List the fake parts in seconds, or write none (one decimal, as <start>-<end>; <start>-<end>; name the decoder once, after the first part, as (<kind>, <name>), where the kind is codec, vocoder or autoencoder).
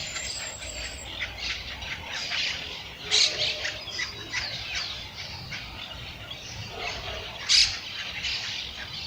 none